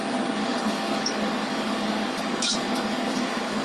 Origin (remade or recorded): remade